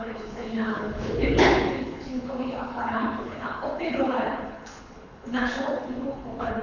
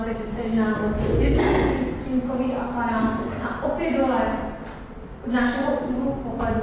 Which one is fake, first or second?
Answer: first